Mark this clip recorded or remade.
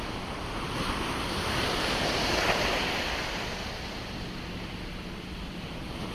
recorded